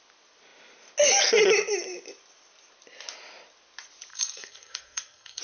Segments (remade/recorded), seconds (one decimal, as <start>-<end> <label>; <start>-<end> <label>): 0.0-4.1 recorded; 4.1-5.4 remade